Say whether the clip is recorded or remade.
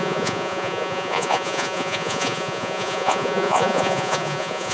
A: remade